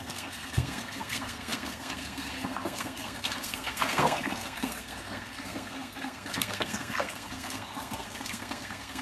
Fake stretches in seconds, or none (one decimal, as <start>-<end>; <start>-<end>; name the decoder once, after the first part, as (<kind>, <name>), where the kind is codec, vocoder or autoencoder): 0.0-9.0 (codec, SNAC)